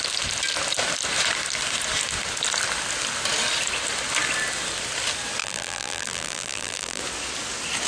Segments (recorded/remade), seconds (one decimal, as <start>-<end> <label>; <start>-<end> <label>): 0.0-5.4 recorded; 5.4-7.0 remade; 7.0-7.9 recorded